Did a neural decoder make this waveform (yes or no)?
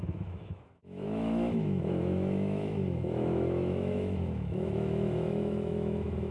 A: yes